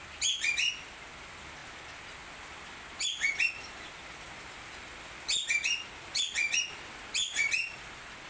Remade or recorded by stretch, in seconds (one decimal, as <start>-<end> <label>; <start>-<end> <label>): 0.0-8.3 recorded